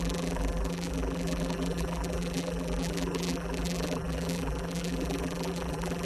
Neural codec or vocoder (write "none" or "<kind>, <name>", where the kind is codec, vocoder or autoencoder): vocoder, BigVGAN v2